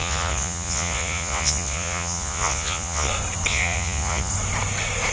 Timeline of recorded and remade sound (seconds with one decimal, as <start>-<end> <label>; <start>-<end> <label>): 0.0-3.1 remade; 3.1-3.5 recorded; 3.5-4.3 remade; 4.3-5.1 recorded